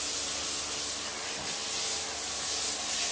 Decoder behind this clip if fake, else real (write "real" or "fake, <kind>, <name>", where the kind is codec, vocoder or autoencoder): real